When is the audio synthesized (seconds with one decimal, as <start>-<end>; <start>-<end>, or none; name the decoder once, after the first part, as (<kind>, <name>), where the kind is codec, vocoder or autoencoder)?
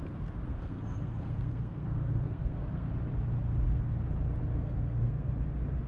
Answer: 0.5-2.9 (codec, SNAC); 4.5-5.3